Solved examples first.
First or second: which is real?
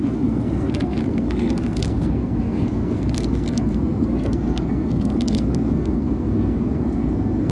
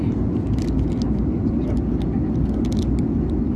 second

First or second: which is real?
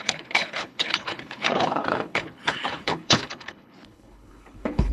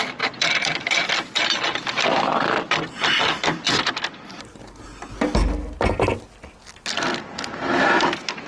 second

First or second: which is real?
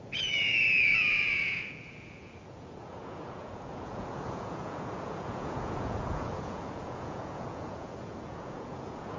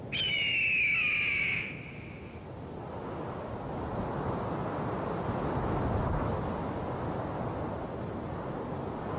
second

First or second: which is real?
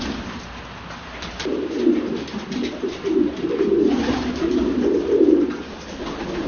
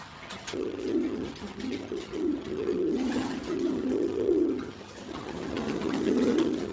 first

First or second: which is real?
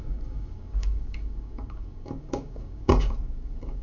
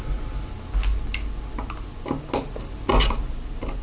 second